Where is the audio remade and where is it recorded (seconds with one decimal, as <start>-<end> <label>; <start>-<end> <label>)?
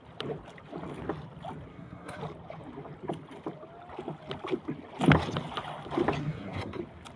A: 0.0-1.7 recorded; 1.7-2.2 remade; 2.2-6.2 recorded; 6.2-6.8 remade; 6.8-7.2 recorded